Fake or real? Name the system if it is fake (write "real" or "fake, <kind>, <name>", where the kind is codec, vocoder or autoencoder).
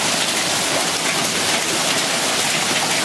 real